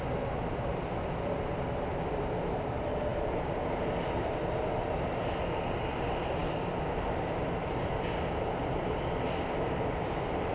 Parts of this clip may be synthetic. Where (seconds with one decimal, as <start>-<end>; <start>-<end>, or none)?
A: 0.0-10.5